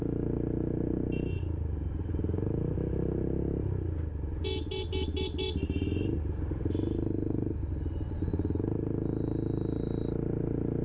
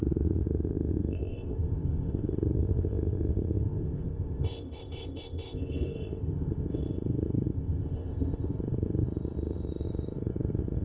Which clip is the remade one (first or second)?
second